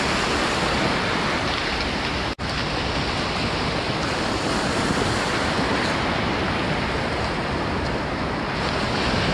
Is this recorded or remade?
recorded